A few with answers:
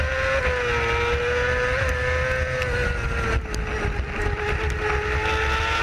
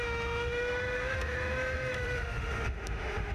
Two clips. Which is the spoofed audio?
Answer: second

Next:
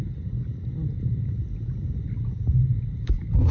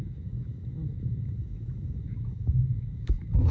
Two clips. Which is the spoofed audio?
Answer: second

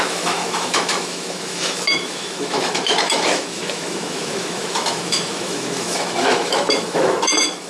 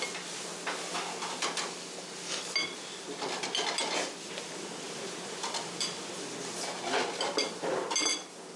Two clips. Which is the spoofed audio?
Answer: first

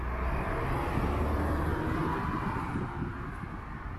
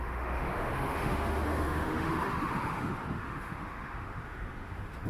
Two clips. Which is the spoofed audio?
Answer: second